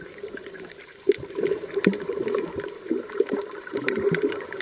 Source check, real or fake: fake